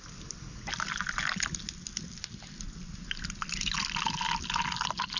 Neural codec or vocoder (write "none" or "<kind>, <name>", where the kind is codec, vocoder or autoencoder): none